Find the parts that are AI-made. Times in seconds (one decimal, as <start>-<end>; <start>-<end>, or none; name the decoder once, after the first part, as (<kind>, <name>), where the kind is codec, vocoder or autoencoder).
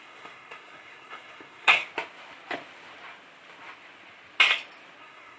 0.0-1.8 (codec, SNAC); 5.0-5.4